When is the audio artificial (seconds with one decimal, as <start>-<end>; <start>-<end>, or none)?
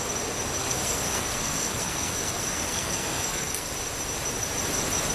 0.6-3.7